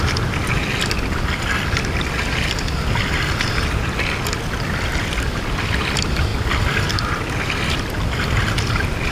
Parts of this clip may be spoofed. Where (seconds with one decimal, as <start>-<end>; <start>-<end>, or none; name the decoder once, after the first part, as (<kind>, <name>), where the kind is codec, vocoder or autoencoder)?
none